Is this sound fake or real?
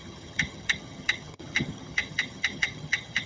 fake